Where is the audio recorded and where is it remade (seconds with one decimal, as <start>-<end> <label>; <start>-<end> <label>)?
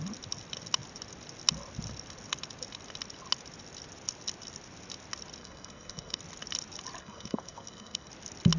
0.0-5.4 recorded; 5.4-6.2 remade; 6.2-7.0 recorded; 7.0-8.1 remade; 8.1-8.6 recorded